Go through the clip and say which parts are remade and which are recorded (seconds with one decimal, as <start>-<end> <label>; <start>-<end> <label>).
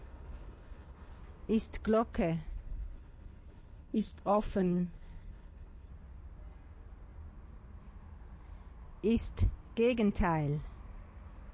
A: 0.0-1.2 remade; 1.2-2.5 recorded; 2.5-5.9 remade; 5.9-11.5 recorded